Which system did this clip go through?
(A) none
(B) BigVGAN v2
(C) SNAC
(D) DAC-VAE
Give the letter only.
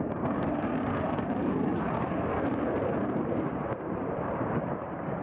B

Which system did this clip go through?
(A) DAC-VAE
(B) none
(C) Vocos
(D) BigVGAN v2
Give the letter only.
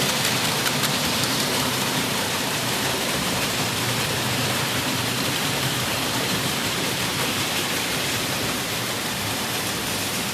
D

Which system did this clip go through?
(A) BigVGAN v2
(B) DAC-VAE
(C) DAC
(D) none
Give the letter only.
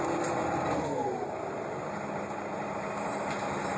A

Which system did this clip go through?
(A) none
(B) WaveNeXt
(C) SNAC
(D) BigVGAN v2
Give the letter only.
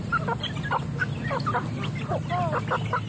A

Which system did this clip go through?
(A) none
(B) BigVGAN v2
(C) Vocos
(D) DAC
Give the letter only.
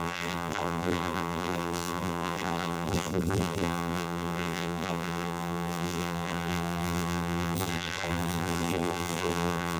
B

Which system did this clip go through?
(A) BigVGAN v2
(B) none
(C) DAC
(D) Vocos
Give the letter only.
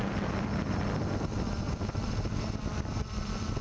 B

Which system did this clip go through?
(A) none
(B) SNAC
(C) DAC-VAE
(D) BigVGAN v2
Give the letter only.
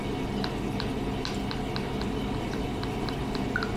A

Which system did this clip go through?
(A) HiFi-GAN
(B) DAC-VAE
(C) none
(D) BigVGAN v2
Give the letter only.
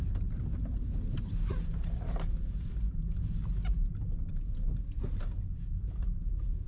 D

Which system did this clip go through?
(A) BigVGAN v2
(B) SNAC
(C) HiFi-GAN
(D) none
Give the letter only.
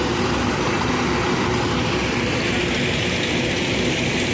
D